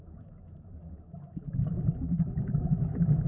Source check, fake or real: fake